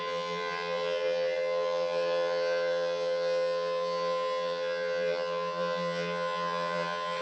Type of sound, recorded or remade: remade